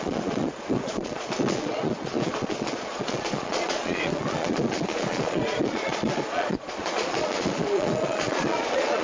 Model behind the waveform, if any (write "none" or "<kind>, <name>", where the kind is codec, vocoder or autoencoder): vocoder, Vocos